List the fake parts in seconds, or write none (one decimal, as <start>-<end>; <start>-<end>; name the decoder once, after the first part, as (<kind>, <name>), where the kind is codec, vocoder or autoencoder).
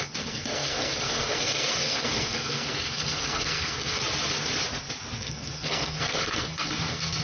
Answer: 0.0-4.0 (codec, SNAC); 5.2-7.2